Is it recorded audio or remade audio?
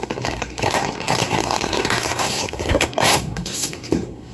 remade